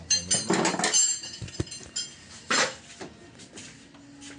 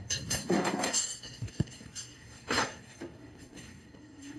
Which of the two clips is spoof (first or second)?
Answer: second